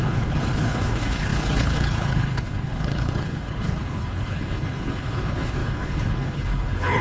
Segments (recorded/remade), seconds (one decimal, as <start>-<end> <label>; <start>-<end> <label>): 0.0-7.0 remade

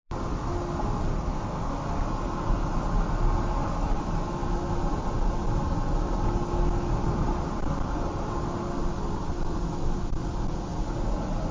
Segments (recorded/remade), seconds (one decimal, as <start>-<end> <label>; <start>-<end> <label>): 0.0-1.1 recorded; 1.1-1.7 remade; 1.7-11.5 recorded

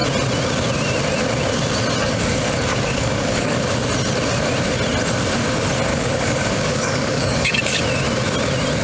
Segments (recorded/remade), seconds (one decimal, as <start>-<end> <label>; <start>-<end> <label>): 0.0-2.0 recorded; 2.0-3.7 remade; 3.7-5.9 recorded; 5.9-7.8 remade; 7.8-8.8 recorded

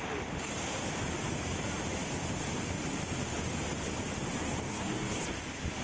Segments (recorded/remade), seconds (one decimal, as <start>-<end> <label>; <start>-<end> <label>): 0.0-4.7 recorded; 4.7-5.2 remade; 5.2-5.8 recorded